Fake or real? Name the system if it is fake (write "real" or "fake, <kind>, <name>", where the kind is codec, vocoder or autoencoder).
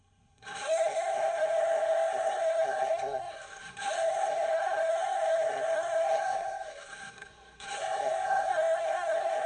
fake, codec, SNAC